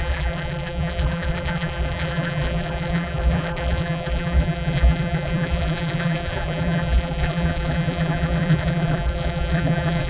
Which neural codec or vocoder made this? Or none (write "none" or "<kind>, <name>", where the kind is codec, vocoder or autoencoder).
vocoder, BigVGAN v2